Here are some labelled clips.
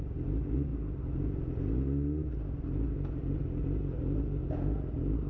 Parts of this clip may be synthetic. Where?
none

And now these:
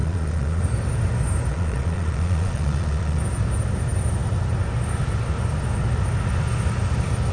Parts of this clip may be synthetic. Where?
0.0-0.6 (vocoder, Vocos); 1.5-3.2

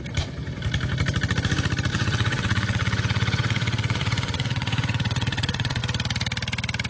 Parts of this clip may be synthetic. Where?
1.9-5.8 (vocoder, WaveNeXt)